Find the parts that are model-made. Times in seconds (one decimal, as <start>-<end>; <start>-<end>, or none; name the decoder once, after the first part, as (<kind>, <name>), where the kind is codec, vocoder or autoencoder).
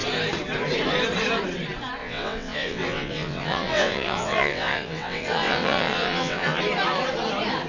2.0-6.6 (vocoder, WaveNeXt)